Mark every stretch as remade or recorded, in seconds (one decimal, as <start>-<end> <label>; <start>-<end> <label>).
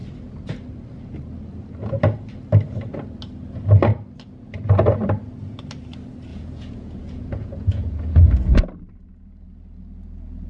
0.0-6.3 recorded; 6.3-8.6 remade; 8.6-10.5 recorded